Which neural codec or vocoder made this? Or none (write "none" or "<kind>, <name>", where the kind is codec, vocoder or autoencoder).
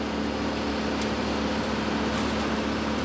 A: none